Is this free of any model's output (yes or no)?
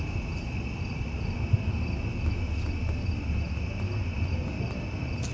yes